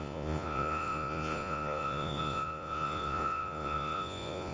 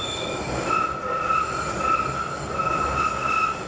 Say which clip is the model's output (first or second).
first